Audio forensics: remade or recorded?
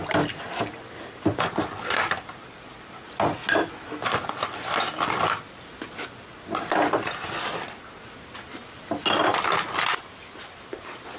recorded